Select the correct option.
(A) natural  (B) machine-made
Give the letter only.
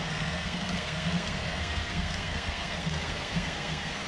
B